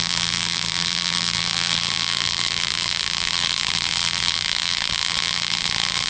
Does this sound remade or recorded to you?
remade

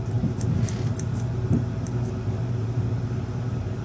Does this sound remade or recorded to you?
recorded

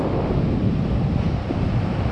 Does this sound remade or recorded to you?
remade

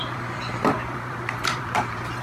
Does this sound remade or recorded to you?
remade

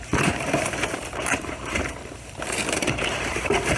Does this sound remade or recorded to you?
remade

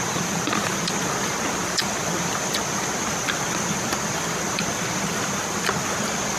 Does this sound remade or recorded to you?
remade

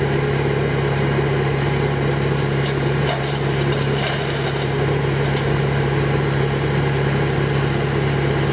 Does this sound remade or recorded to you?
remade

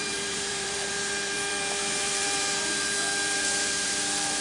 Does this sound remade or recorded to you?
remade